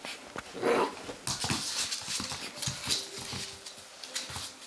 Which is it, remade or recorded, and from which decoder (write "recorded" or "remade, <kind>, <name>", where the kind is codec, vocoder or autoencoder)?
recorded